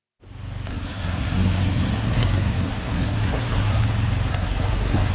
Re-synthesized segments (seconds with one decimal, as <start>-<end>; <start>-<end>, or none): 0.7-3.8; 4.3-5.1